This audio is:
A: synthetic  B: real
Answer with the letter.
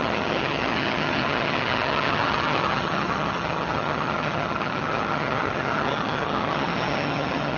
A